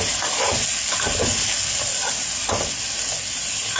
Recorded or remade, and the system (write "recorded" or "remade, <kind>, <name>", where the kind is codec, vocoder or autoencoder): recorded